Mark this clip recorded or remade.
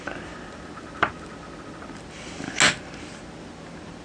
recorded